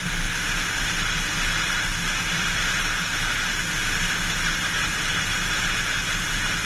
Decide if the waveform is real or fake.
real